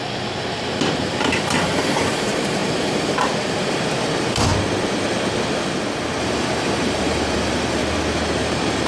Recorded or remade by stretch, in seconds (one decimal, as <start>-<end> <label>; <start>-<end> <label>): 0.0-4.5 remade; 4.5-6.2 recorded; 6.2-7.8 remade; 7.8-8.4 recorded; 8.4-8.9 remade